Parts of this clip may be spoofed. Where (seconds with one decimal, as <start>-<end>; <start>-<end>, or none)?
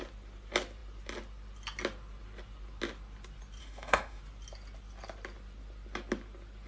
3.6-4.2